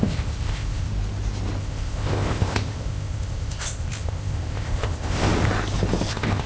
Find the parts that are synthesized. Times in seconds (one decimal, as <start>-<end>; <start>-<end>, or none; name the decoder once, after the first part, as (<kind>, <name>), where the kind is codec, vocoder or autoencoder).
0.0-0.9 (codec, ZipCodec); 1.6-5.3; 6.1-6.5